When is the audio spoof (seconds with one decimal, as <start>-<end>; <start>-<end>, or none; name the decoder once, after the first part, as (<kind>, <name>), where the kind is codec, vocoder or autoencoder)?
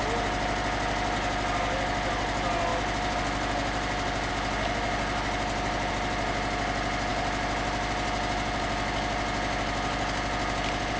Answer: none